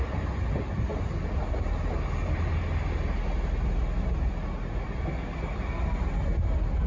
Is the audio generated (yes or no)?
no